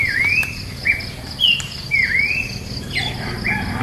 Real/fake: real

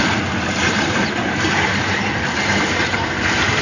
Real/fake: fake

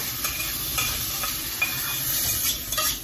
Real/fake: fake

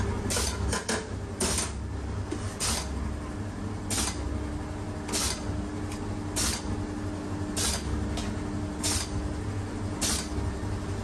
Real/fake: real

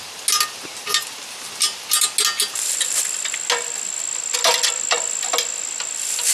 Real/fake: real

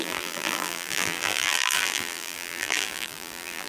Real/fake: fake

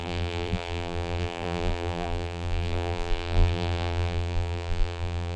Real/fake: fake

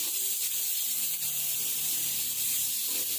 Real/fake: fake